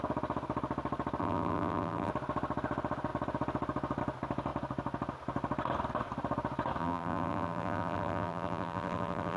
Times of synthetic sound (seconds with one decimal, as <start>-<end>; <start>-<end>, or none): 1.2-2.1; 6.8-9.4